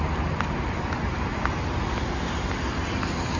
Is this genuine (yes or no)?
yes